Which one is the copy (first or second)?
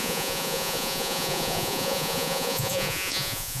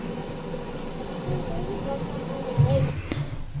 first